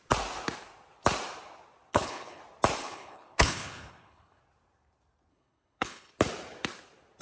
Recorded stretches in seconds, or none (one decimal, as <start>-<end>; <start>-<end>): 0.0-1.9; 2.4-2.8; 4.4-5.3; 6.1-7.2